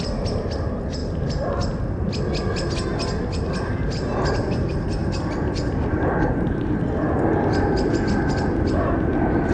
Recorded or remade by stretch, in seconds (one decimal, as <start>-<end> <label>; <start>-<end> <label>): 0.0-9.5 recorded